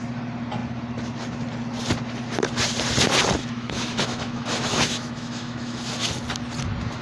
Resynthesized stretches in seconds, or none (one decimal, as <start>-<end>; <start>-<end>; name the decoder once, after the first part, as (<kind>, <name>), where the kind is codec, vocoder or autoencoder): 3.4-5.9 (autoencoder, DAC-VAE)